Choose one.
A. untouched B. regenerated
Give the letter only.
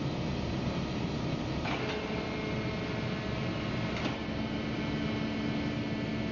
A